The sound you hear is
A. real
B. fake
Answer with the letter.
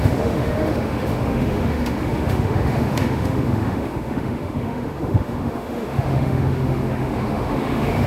B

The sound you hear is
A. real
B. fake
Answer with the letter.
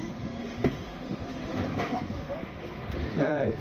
B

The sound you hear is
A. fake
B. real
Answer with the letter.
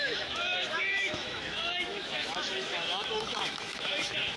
A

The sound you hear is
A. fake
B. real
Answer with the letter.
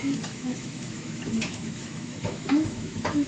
A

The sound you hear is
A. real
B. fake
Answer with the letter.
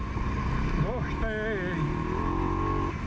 A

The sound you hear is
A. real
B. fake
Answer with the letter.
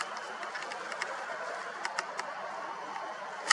A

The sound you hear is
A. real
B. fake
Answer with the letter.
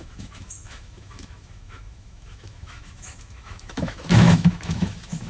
B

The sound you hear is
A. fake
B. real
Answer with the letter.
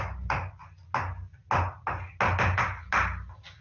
B